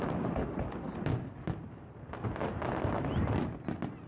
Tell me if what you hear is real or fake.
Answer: real